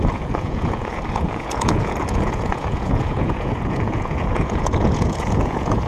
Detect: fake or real fake